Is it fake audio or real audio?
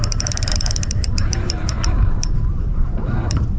fake